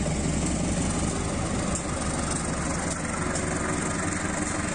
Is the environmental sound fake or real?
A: real